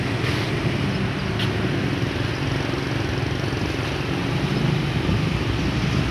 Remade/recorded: recorded